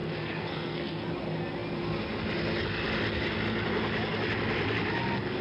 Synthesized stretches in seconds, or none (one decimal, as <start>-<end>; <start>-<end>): 0.0-1.1